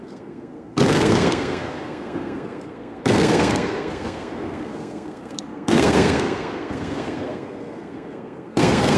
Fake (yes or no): yes